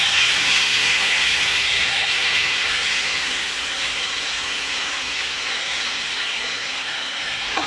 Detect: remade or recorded remade